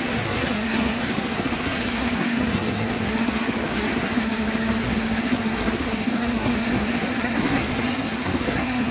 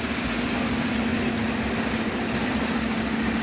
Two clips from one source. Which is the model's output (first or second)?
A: first